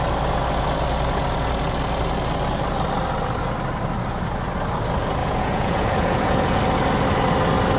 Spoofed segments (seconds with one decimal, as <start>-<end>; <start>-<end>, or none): 5.2-6.6